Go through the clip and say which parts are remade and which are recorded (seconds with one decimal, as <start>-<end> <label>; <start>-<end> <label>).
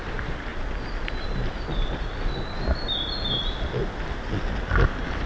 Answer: 0.0-5.3 recorded